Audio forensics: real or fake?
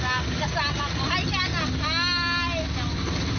real